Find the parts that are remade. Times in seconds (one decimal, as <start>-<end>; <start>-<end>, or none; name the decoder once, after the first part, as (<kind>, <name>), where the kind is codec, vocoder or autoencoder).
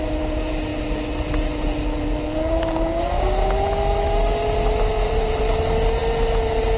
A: 4.9-5.4 (vocoder, BigVGAN v2)